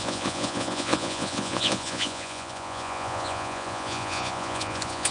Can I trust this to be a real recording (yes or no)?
no